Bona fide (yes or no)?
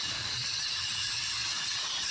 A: no